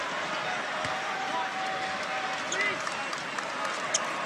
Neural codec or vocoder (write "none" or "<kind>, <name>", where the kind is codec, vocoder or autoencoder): none